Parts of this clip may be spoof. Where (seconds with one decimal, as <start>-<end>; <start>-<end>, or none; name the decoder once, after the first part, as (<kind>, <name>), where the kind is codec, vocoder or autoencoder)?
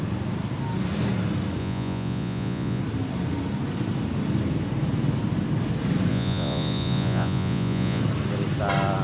1.6-2.8 (vocoder, Vocos); 6.1-8.0